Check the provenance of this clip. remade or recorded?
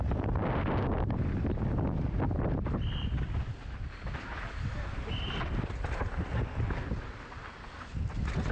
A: recorded